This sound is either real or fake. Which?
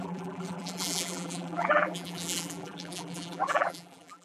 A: fake